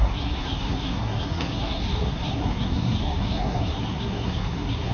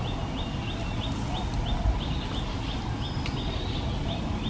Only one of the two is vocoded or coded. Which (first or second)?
first